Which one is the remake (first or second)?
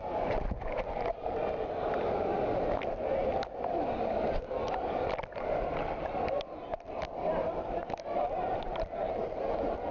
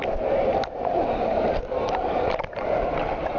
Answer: second